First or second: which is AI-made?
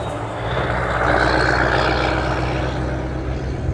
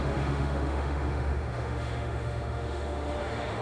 second